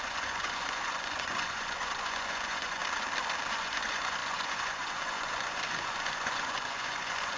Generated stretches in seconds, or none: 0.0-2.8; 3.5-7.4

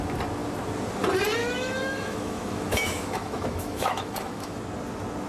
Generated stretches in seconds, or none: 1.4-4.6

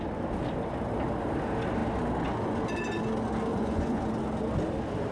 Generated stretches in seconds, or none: 3.5-4.1